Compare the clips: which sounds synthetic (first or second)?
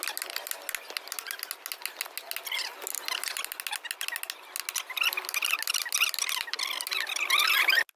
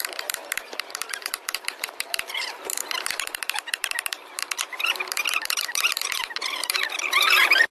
second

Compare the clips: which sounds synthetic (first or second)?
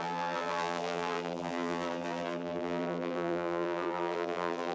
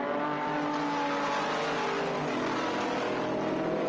first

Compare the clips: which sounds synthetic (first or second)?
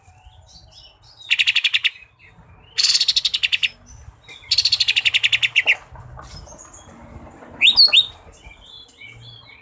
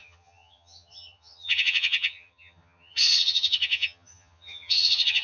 second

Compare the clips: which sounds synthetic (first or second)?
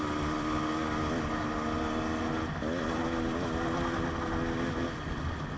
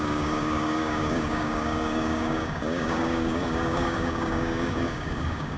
second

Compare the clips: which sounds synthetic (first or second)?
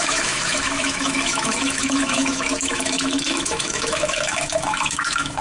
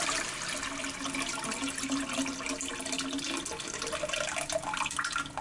first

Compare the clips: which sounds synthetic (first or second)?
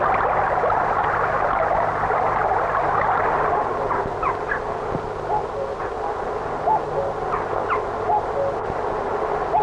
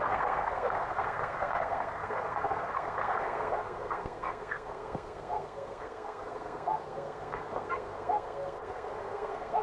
second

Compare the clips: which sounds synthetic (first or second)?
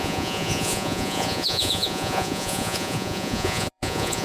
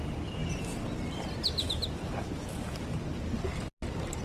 first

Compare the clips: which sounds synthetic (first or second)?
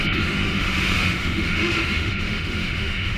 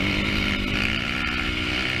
first